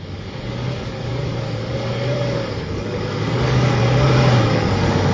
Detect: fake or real fake